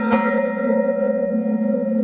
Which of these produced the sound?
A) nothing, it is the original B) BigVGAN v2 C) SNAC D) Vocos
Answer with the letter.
D